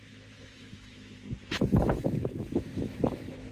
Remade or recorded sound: remade